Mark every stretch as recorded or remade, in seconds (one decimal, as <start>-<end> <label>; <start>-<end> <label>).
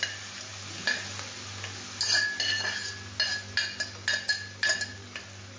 0.0-5.6 recorded